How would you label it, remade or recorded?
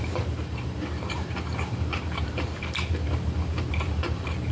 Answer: remade